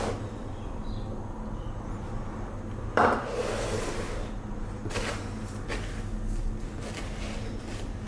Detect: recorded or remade recorded